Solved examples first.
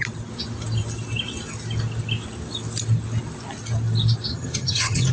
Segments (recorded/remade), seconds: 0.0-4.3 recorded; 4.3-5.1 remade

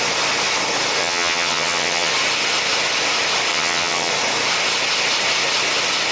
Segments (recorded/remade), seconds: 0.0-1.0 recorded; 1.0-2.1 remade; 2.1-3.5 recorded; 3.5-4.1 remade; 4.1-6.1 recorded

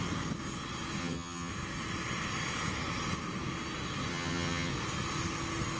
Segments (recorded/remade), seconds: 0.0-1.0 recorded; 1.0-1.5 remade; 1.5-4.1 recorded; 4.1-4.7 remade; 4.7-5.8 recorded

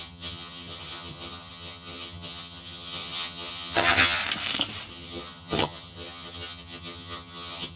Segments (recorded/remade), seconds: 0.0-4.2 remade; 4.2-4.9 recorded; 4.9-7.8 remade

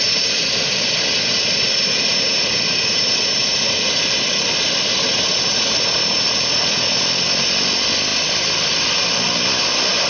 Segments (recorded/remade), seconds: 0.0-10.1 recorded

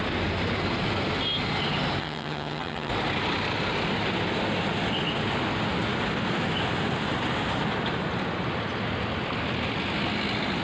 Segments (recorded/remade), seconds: 0.0-2.0 recorded; 2.0-2.9 remade; 2.9-10.6 recorded

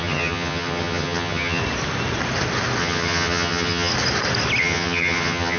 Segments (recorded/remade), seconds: 0.0-1.6 remade; 1.6-2.8 recorded; 2.8-3.9 remade; 3.9-4.6 recorded; 4.6-5.6 remade

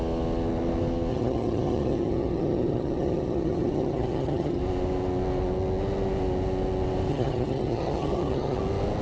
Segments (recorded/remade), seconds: 0.0-1.1 recorded; 1.1-4.6 remade; 4.6-7.1 recorded; 7.1-8.6 remade; 8.6-9.0 recorded